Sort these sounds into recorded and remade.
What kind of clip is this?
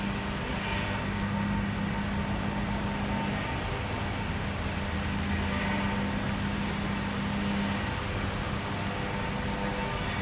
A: recorded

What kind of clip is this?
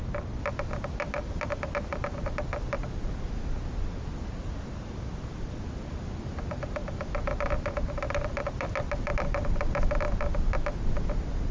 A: recorded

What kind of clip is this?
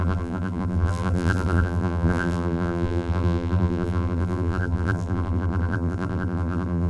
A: remade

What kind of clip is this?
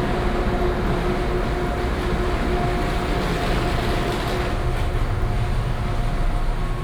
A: recorded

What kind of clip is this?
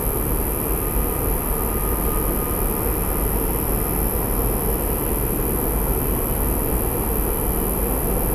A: recorded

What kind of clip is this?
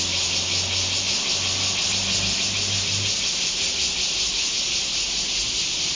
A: recorded